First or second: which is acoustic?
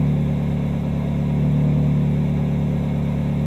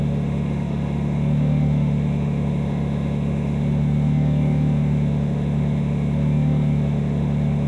first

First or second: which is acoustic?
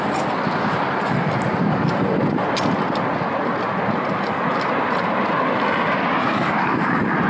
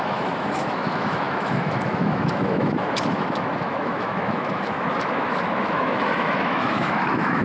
first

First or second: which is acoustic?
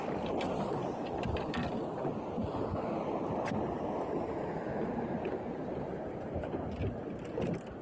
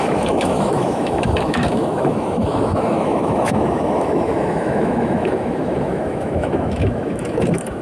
first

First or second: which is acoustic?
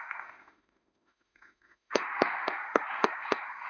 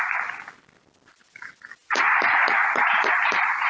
second